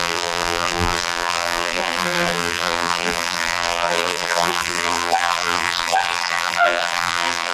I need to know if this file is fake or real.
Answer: fake